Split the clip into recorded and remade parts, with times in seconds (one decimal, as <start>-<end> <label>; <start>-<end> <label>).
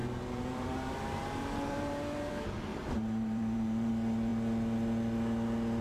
0.0-2.3 remade; 2.3-2.7 recorded; 2.7-3.9 remade; 3.9-5.8 recorded